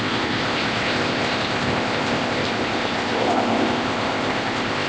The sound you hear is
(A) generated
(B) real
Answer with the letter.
A